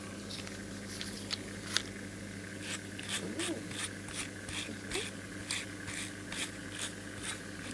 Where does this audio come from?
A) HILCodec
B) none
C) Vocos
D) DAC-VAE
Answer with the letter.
B